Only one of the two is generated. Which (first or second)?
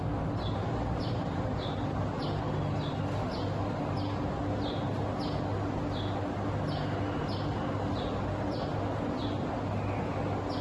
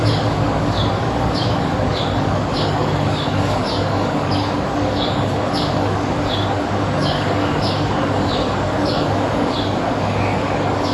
second